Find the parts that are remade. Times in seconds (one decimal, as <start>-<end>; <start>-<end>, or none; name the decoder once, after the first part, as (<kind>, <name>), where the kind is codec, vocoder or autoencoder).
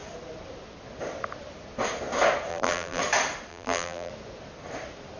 2.5-3.0 (vocoder, BigVGAN v2); 3.5-4.1